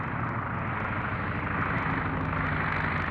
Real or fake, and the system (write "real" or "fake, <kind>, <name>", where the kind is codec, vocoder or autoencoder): real